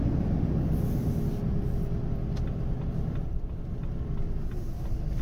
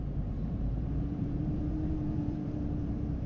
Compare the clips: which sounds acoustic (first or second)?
first